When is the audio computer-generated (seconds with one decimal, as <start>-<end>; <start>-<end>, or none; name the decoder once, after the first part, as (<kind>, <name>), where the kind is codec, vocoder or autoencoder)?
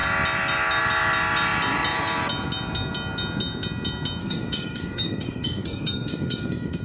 4.2-6.8 (codec, DAC)